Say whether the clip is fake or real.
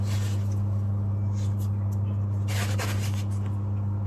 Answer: real